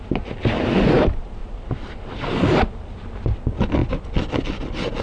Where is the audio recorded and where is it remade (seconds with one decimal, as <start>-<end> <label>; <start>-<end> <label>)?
0.0-1.4 recorded; 1.4-1.9 remade; 1.9-5.0 recorded